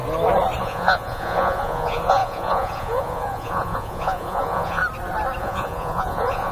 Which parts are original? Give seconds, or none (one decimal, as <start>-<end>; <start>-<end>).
0.0-0.6; 4.8-5.4

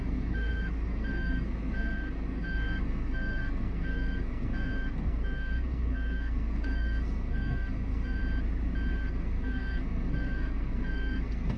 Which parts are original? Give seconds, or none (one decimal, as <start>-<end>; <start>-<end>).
8.2-8.9

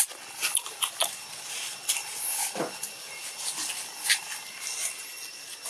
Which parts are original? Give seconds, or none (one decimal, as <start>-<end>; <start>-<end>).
0.0-0.5; 1.0-5.7